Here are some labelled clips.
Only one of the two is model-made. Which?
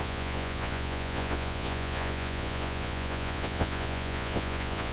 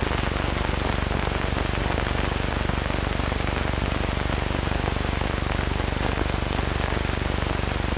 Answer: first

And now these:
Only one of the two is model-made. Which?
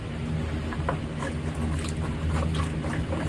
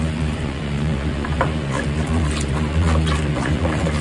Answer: second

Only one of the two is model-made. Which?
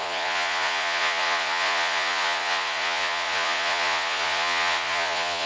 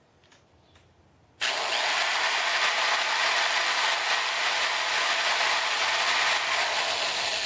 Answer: first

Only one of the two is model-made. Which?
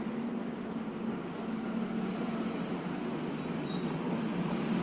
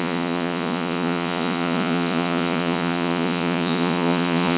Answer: second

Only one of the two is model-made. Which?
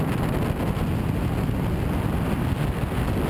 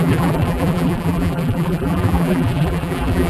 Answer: second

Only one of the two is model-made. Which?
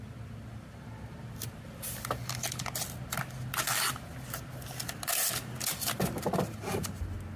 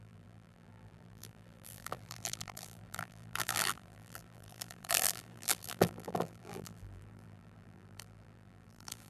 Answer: second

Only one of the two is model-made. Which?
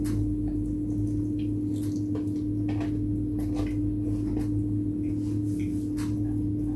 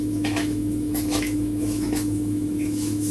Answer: second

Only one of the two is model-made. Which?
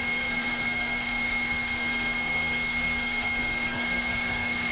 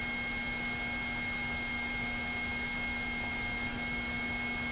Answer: first